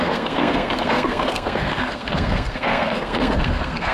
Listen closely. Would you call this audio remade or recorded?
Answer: remade